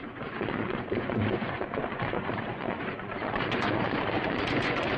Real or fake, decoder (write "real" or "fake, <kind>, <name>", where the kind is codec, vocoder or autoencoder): fake, vocoder, Vocos